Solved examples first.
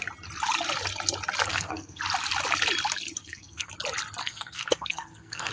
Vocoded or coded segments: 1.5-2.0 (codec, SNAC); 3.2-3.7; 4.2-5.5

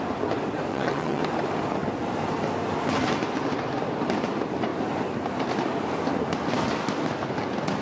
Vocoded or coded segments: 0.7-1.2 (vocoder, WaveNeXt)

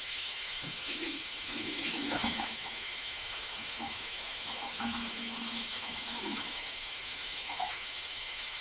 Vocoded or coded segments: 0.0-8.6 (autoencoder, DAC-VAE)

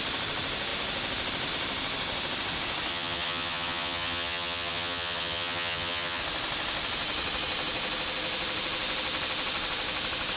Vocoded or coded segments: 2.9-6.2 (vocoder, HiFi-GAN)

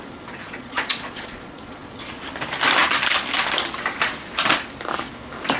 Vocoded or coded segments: 0.4-2.0 (vocoder, Vocos)